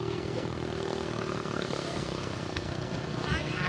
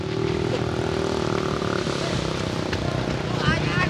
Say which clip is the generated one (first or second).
first